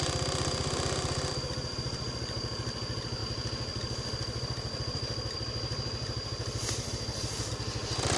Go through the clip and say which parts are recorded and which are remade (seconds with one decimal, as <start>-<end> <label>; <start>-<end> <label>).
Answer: 0.0-8.2 recorded